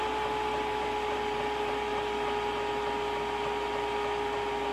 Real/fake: real